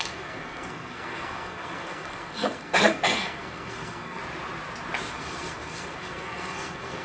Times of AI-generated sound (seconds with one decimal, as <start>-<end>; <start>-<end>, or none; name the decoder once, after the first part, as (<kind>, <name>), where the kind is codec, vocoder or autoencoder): 0.0-4.2 (codec, SNAC); 5.1-7.0